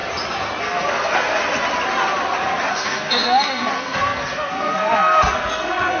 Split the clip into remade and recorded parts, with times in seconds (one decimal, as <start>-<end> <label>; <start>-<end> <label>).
0.0-0.6 recorded; 0.6-1.4 remade; 1.4-2.7 recorded; 2.7-6.0 remade